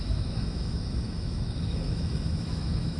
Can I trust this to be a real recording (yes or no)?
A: no